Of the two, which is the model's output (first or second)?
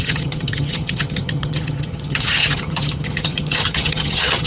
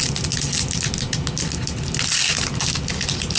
first